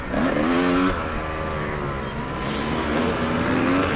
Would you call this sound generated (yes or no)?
no